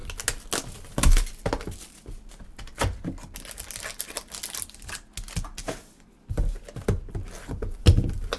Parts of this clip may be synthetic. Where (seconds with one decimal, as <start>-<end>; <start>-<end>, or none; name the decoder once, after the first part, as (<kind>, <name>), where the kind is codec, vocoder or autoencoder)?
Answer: none